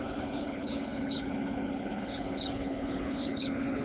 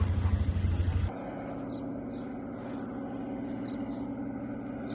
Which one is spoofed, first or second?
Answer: first